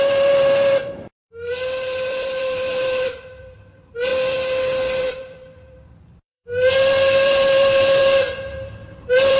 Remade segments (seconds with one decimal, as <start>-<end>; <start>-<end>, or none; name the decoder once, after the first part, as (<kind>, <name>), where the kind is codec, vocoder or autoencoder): 0.0-4.1 (vocoder, BigVGAN v2); 5.0-9.4